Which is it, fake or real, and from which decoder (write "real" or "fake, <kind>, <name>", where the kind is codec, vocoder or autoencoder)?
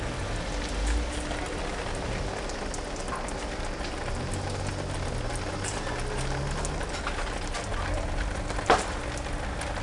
real